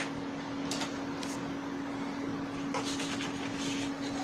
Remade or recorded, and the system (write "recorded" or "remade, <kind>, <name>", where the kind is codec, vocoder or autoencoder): recorded